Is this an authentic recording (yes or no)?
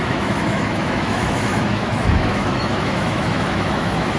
no